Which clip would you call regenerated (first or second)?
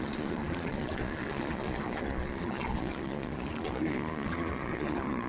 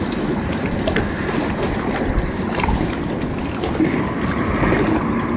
first